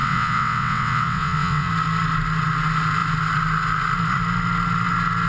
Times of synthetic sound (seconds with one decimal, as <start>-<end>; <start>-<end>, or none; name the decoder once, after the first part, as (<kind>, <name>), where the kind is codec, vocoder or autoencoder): 0.0-1.7 (vocoder, WaveNeXt)